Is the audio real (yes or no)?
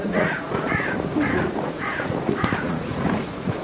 no